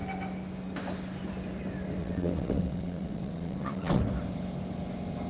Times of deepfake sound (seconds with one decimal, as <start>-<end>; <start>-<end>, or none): 2.0-4.0